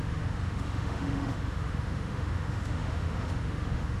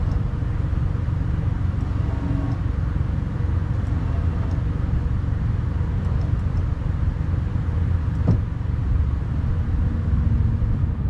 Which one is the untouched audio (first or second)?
second